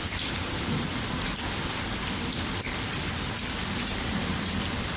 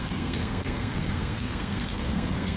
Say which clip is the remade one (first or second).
second